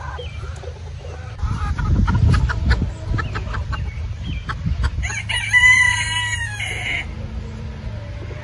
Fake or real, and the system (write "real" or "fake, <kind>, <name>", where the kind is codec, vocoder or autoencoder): real